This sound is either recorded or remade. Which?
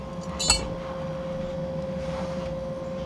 recorded